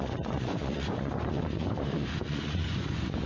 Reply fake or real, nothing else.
fake